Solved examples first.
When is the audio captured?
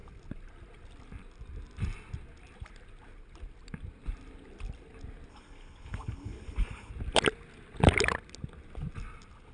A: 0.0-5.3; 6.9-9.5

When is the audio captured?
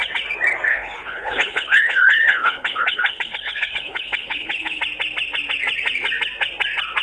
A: 0.0-0.7; 4.8-7.0